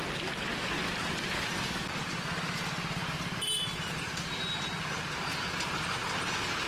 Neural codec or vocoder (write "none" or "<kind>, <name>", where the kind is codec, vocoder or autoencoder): none